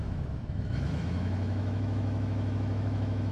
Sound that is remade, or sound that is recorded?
remade